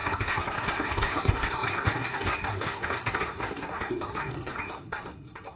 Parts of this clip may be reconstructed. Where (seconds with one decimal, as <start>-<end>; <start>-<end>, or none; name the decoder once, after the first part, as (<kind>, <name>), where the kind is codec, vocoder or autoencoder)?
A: 0.0-5.6 (codec, SNAC)